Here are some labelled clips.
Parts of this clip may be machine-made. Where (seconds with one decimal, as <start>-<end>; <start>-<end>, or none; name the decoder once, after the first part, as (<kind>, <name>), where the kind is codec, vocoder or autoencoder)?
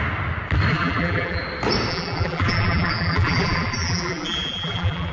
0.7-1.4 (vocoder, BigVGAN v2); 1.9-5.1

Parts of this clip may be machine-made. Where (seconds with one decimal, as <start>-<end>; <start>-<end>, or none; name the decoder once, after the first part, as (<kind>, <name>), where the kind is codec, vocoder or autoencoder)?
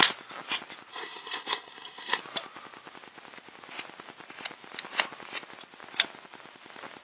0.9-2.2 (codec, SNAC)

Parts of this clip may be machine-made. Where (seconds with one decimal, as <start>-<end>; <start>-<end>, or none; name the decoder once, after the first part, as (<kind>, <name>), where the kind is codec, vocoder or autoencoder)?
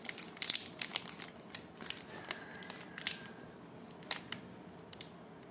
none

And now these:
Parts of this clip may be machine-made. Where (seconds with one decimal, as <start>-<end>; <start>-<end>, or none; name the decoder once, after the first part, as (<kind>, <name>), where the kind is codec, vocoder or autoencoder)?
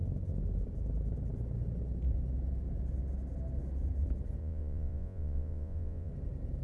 4.4-6.1 (vocoder, Vocos)